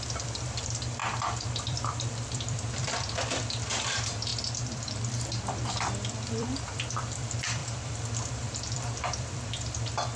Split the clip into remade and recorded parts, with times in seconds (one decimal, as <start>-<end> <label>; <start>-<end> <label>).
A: 0.0-10.2 remade